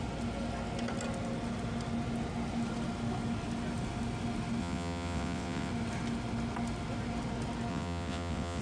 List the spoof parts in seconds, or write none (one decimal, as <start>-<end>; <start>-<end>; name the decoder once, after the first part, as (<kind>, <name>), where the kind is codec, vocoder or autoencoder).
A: 4.6-5.7 (vocoder, WaveNeXt); 7.7-8.6